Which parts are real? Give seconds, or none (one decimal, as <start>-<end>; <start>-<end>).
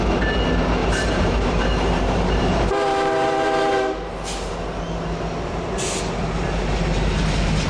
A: 0.0-0.8; 4.8-7.7